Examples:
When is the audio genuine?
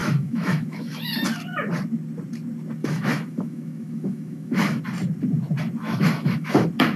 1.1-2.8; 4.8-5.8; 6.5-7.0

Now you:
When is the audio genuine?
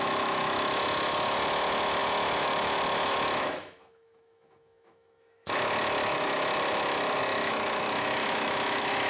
none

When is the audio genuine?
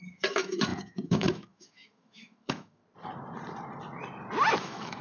2.8-4.6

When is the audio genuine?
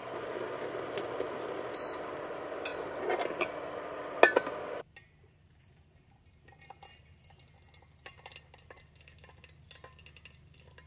0.0-10.9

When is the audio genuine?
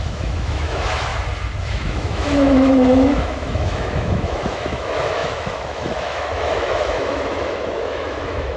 1.1-1.6